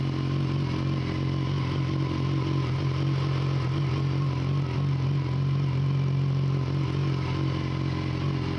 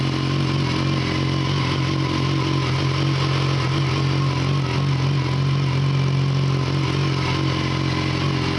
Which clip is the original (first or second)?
second